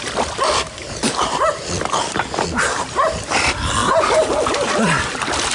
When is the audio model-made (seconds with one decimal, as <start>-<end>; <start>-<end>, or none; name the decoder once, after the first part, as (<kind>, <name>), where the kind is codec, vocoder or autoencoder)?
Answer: none